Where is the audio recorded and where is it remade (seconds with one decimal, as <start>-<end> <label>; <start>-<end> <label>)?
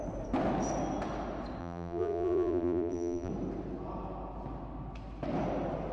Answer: 0.0-1.6 recorded; 1.6-3.3 remade; 3.3-5.9 recorded